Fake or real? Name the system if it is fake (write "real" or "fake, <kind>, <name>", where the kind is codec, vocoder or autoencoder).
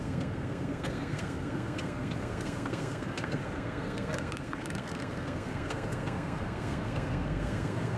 fake, codec, SNAC